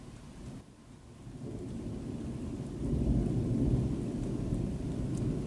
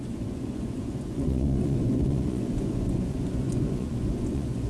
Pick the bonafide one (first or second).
first